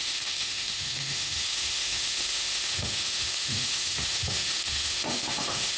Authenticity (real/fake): fake